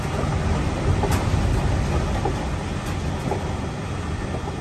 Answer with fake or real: real